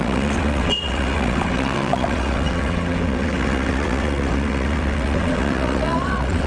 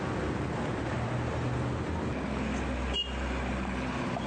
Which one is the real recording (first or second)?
second